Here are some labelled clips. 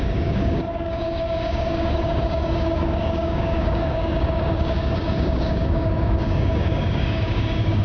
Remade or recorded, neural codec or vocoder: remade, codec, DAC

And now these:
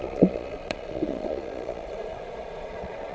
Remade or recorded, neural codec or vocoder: remade, vocoder, Vocos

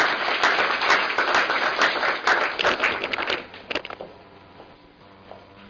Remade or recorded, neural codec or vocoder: recorded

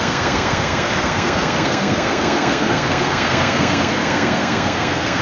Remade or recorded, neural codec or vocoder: remade, codec, SNAC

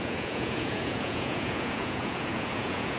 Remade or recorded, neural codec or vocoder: remade, vocoder, Vocos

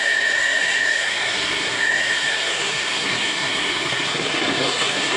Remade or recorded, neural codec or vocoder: remade, codec, SNAC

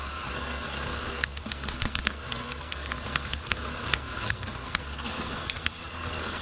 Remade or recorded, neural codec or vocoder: remade, codec, SNAC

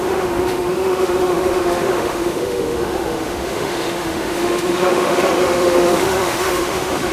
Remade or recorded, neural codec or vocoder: remade, autoencoder, DAC-VAE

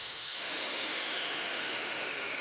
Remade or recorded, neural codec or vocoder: remade, autoencoder, DAC-VAE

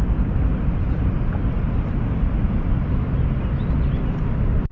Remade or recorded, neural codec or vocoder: recorded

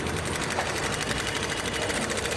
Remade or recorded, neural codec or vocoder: recorded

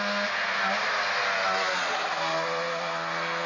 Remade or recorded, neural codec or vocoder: recorded